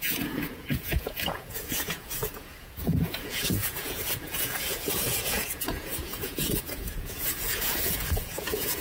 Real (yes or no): no